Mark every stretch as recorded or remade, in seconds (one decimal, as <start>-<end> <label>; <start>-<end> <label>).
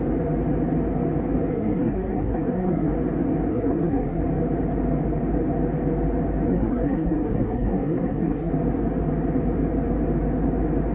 0.0-1.5 recorded; 1.5-2.9 remade; 2.9-3.5 recorded; 3.5-4.2 remade; 4.2-6.5 recorded; 6.5-8.5 remade; 8.5-10.9 recorded